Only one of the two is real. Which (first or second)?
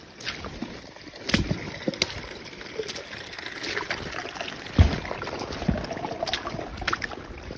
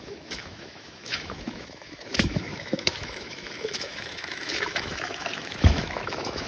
first